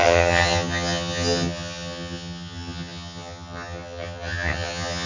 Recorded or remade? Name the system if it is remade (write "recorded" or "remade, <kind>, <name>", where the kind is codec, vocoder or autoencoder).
remade, vocoder, HiFi-GAN